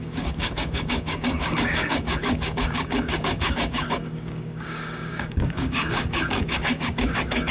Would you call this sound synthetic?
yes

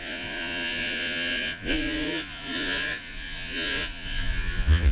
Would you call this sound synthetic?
yes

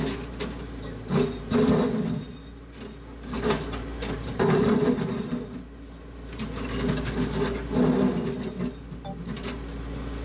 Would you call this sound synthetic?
no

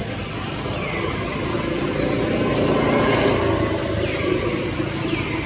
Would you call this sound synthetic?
no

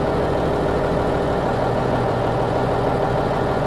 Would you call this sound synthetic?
yes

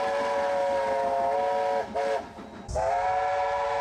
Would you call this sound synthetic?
no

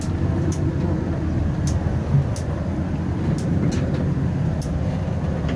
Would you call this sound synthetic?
no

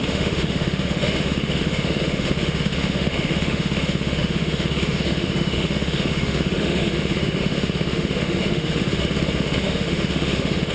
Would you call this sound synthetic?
yes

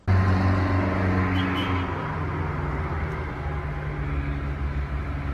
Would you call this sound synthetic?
no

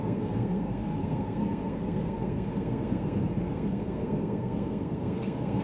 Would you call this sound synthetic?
yes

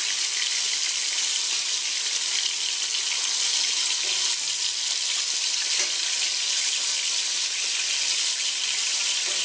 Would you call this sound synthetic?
no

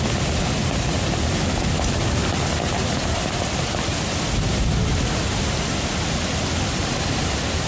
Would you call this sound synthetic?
no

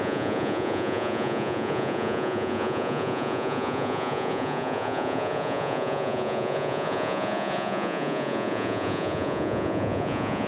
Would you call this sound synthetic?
yes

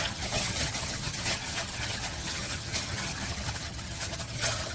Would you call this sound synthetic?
yes